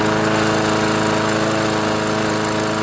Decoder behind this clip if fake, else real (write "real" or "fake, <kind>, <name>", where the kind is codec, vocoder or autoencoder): real